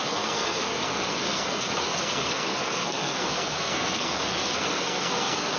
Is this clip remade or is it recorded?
remade